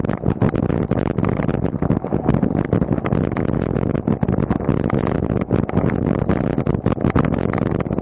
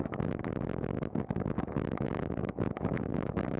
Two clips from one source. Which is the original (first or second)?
first